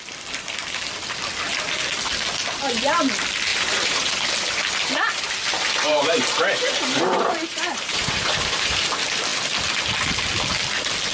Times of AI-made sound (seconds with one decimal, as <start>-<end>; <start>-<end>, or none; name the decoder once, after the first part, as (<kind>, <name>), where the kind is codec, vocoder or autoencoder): 3.5-4.1 (vocoder, BigVGAN v2); 5.9-8.9